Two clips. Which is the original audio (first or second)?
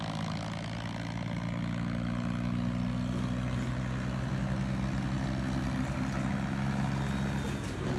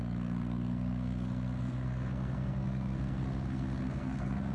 first